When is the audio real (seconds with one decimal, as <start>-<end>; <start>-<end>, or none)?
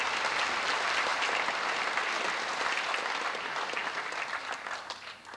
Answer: 0.0-5.4